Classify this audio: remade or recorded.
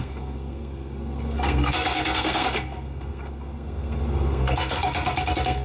remade